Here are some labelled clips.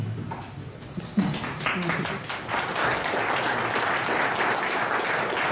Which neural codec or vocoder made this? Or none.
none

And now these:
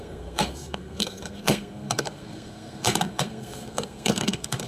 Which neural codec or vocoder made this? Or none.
codec, SNAC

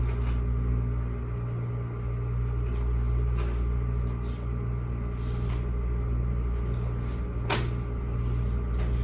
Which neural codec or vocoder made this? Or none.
none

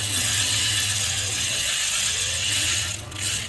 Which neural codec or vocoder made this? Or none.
vocoder, WaveNeXt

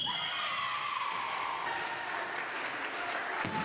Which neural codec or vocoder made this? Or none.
none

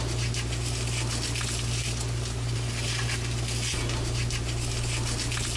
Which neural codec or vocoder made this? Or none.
none